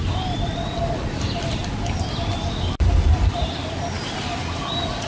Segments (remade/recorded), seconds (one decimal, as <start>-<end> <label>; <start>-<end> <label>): 0.0-1.6 remade; 1.6-5.1 recorded